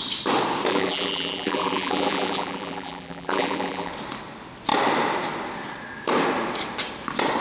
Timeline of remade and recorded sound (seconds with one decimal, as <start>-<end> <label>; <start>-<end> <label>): 0.0-0.7 recorded; 0.7-3.9 remade; 3.9-7.4 recorded